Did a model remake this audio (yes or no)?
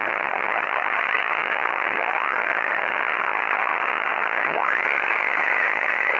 yes